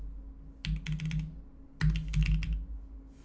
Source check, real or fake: real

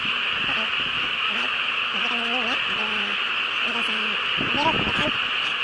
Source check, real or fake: real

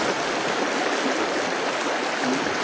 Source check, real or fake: real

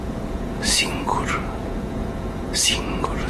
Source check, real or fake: fake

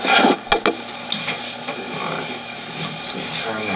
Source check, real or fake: real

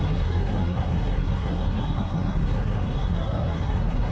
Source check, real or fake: fake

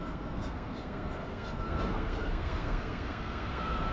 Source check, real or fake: fake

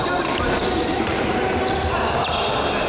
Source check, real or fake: real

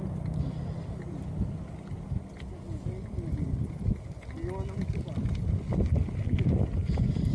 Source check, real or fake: real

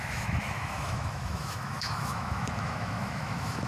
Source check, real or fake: fake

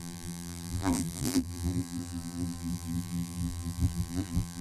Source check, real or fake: fake